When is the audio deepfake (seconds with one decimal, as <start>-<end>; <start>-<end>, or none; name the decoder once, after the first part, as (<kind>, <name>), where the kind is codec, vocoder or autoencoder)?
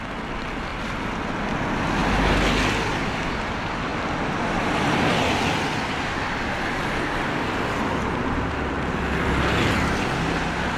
none